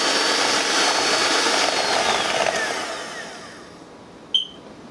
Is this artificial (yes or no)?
no